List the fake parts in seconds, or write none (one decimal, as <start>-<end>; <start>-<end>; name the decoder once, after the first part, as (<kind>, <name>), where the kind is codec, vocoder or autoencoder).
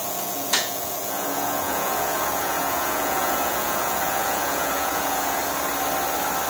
0.0-5.4 (vocoder, Vocos)